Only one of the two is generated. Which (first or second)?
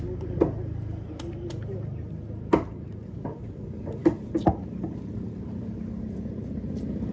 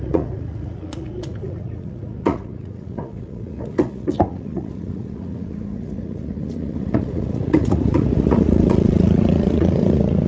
second